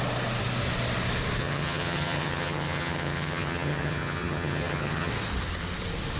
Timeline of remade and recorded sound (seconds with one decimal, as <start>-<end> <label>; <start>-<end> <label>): 0.0-1.4 recorded; 1.4-5.1 remade; 5.1-6.2 recorded